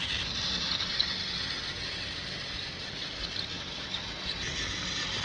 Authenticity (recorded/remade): remade